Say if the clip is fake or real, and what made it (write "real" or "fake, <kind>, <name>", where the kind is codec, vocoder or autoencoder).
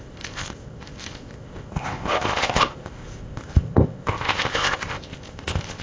fake, codec, ZipCodec